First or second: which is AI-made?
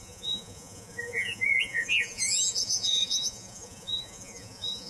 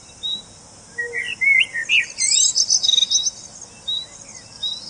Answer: first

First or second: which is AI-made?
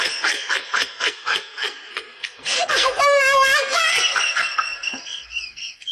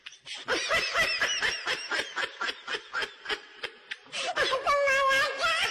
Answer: first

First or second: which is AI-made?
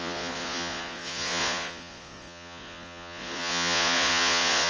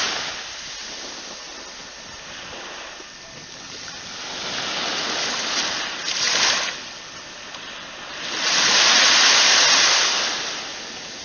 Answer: first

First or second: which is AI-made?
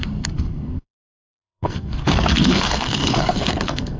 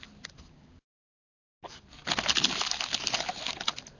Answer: first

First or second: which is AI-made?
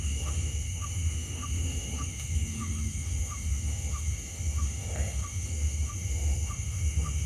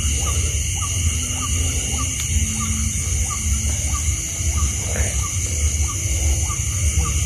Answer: first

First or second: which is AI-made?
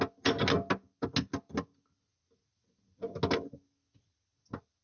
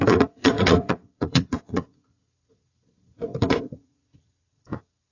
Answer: second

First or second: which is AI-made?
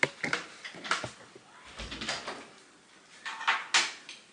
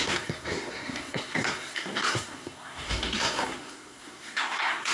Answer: second